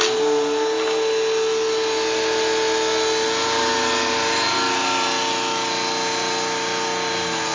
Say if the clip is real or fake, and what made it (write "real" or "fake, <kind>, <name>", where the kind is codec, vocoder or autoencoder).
real